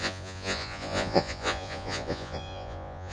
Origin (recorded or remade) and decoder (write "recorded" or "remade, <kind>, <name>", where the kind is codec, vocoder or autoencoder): remade, vocoder, Vocos